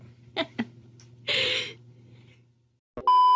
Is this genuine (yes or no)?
yes